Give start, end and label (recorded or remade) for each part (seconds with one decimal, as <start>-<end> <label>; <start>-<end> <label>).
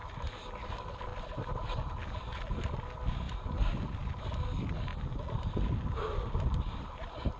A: 0.0-7.4 recorded